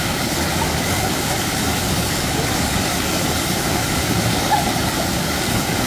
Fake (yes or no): yes